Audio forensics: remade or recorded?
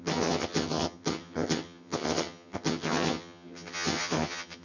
remade